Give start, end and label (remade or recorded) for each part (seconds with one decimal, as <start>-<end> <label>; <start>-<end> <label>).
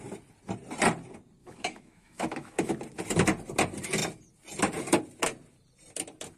0.0-1.4 recorded; 1.4-2.7 remade; 2.7-6.4 recorded